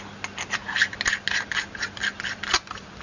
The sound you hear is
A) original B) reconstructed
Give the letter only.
A